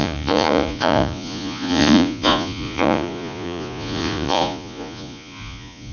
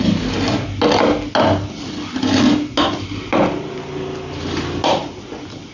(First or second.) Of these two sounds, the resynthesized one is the first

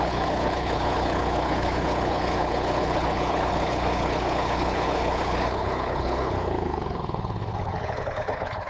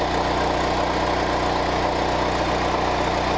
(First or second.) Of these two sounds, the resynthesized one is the first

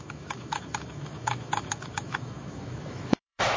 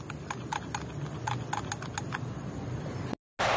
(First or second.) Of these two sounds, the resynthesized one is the first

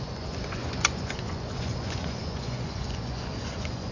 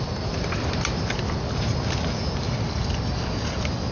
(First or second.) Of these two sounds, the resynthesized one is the first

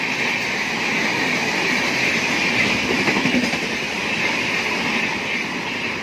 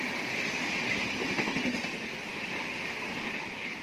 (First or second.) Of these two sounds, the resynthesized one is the second